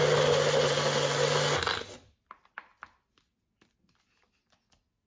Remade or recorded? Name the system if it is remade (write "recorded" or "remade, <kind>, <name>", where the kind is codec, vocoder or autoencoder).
recorded